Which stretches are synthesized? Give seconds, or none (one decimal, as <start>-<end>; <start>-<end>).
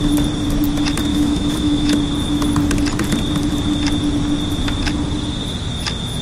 1.1-1.9